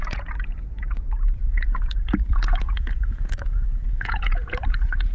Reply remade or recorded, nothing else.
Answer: remade